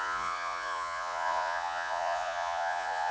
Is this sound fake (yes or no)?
yes